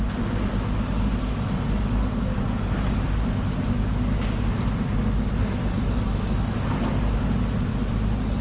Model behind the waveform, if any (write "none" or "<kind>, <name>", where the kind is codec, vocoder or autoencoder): none